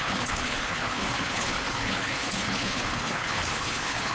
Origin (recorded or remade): remade